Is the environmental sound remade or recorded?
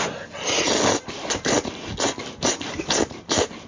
recorded